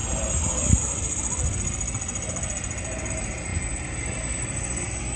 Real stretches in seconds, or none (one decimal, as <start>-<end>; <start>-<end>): 0.0-3.1